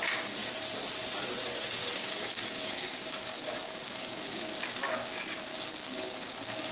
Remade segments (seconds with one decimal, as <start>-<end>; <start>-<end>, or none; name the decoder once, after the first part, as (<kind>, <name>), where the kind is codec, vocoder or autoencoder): 1.8-4.4 (codec, DAC); 5.5-6.7

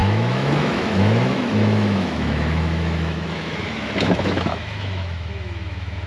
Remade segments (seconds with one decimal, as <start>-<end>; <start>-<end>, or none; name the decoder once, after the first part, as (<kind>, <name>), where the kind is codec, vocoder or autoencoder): 0.0-6.1 (autoencoder, DAC-VAE)